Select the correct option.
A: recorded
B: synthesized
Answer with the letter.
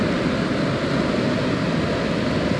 A